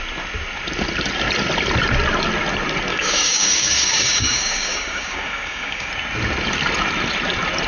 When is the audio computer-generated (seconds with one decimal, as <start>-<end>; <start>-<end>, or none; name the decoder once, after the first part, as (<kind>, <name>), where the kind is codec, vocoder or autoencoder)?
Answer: 2.9-5.9 (codec, DAC)